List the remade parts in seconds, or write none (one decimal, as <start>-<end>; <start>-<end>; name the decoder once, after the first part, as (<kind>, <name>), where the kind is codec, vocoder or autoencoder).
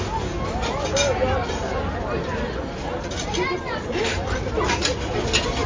none